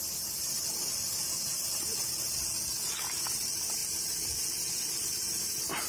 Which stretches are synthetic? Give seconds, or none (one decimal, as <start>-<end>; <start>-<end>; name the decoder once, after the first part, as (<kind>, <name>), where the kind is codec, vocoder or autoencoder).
none